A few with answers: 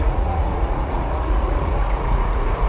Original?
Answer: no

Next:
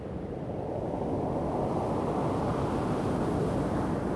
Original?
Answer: yes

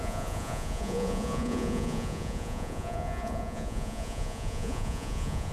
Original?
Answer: no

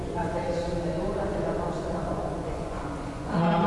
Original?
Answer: no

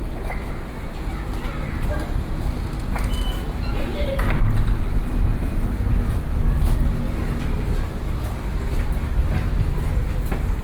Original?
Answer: yes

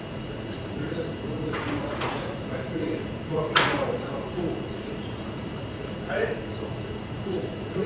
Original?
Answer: no